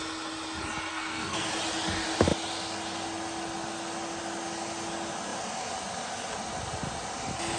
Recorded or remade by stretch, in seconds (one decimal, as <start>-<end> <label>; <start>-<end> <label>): 0.0-0.9 recorded; 0.9-1.5 remade; 1.5-7.6 recorded